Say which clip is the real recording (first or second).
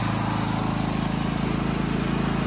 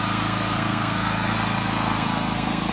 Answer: first